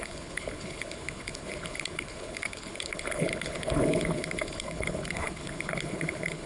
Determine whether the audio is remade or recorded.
remade